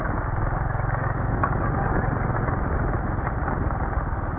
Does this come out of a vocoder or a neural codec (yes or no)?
no